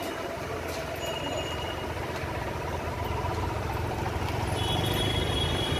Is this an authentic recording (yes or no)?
yes